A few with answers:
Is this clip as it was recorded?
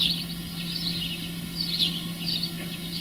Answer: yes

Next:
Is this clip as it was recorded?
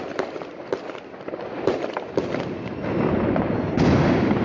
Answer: yes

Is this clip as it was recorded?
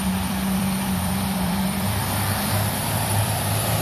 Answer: no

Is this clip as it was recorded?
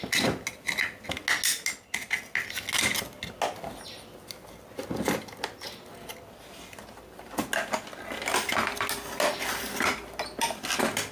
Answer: yes